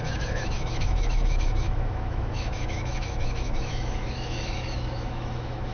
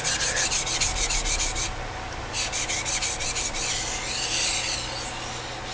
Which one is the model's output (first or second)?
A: first